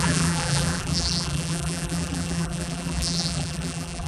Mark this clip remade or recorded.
remade